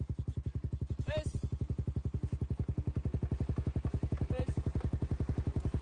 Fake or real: real